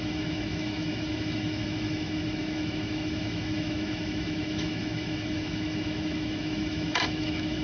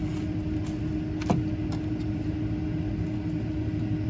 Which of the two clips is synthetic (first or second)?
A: first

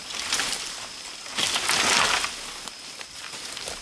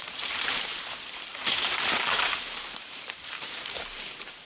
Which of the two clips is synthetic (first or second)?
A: second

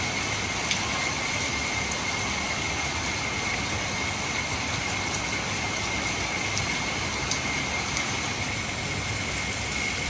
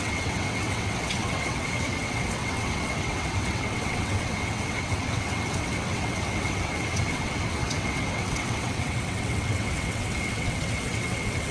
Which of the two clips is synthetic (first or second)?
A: second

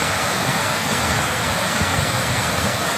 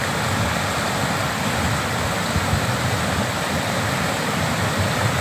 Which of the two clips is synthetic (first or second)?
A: first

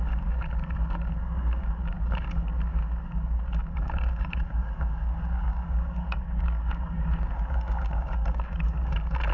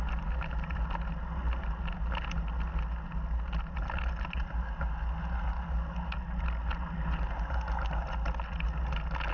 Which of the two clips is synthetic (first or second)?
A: first